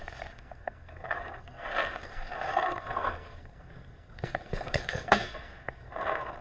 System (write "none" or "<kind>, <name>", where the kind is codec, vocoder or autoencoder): codec, SNAC